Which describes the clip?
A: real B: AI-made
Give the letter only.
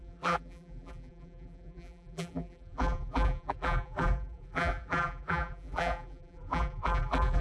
B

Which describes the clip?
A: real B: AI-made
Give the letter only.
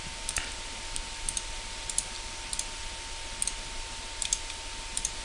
A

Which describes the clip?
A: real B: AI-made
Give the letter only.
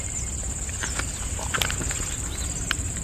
B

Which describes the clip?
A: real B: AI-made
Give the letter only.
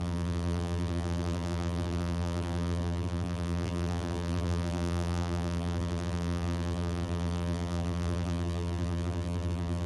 B